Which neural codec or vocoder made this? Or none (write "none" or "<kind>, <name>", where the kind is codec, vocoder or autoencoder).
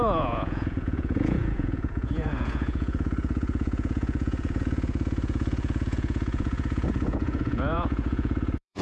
vocoder, Vocos